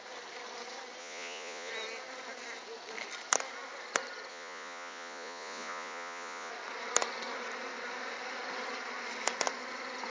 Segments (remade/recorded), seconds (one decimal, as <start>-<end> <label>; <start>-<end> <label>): 0.0-1.0 recorded; 1.0-1.7 remade; 1.7-4.3 recorded; 4.3-6.5 remade; 6.5-10.1 recorded